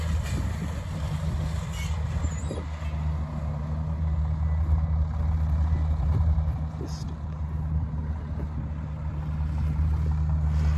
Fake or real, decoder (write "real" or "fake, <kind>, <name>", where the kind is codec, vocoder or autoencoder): real